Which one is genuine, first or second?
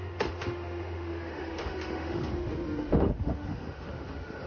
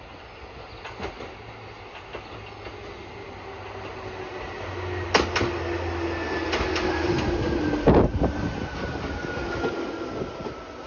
second